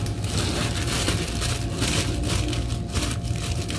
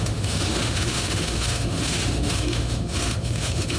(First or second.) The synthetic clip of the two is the second